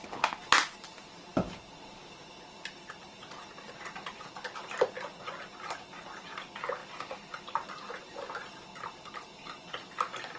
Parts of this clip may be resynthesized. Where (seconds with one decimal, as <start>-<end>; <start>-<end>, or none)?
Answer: 1.3-4.6; 6.8-8.9